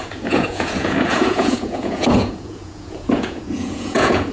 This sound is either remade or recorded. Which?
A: remade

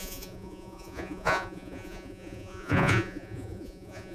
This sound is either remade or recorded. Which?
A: remade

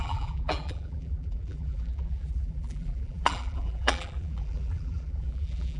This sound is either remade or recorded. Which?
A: remade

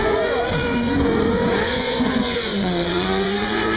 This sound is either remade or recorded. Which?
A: remade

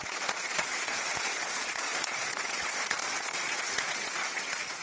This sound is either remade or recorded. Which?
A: remade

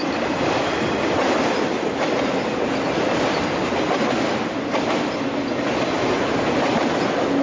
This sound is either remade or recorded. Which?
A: recorded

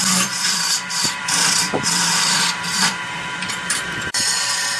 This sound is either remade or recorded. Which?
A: remade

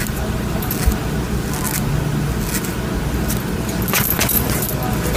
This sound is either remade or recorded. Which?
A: recorded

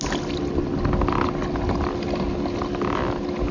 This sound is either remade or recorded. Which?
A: recorded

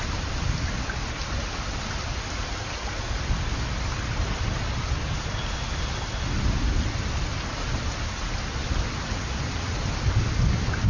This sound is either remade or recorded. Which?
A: recorded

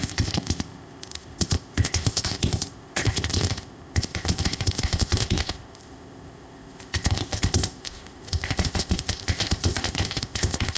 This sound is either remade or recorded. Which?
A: remade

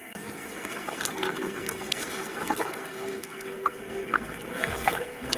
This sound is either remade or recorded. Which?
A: remade